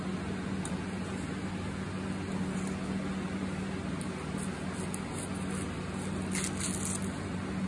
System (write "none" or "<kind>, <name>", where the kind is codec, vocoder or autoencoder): none